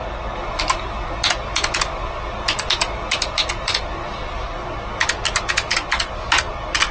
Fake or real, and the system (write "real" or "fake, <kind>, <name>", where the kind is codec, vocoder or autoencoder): real